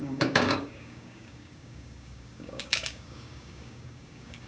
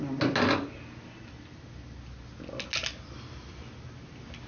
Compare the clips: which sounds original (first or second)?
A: second